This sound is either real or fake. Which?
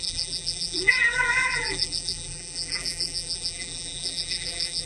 fake